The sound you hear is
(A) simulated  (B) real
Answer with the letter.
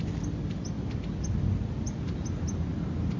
B